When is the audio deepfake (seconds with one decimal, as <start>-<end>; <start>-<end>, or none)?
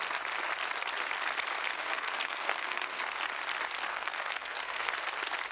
1.7-3.0; 3.9-4.9